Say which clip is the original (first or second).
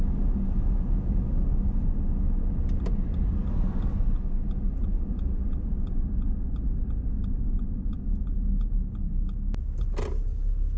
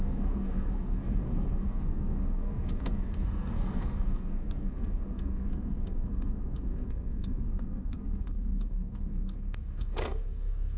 first